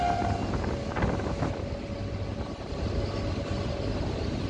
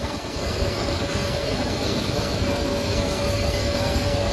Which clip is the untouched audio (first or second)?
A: first